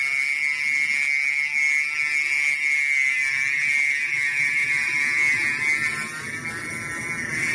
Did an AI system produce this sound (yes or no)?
no